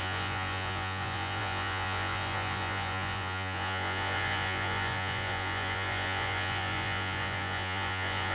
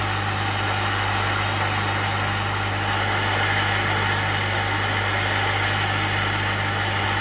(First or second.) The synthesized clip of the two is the first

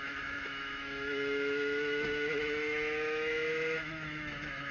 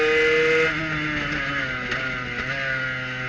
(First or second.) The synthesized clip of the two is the first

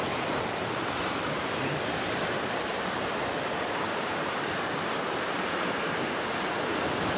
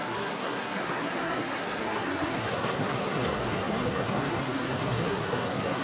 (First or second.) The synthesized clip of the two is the second